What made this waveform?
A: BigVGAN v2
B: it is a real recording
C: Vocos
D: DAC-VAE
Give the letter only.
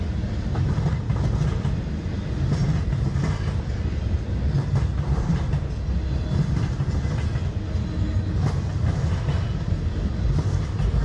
B